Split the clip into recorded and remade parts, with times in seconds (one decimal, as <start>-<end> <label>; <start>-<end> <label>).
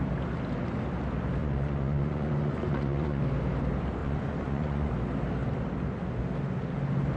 0.0-1.4 recorded; 1.4-3.2 remade; 3.2-4.0 recorded; 4.0-4.9 remade; 4.9-7.2 recorded